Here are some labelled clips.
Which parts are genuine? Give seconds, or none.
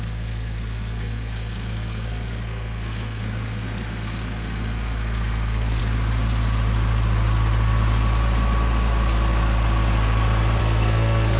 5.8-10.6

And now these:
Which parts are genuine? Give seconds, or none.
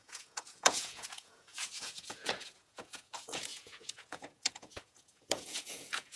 none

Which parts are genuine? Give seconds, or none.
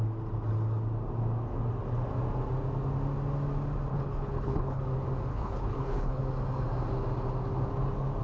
0.0-3.9; 4.8-5.3; 6.2-8.2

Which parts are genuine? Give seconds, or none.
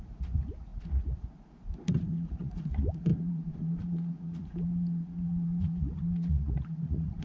none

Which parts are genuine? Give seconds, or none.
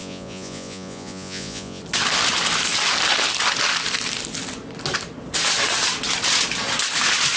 1.8-7.4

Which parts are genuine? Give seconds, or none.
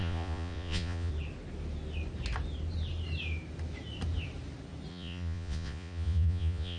1.1-4.9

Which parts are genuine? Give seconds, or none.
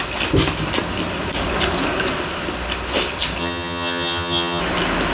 0.0-3.4; 4.6-5.1